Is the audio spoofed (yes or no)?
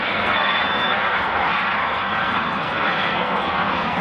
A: yes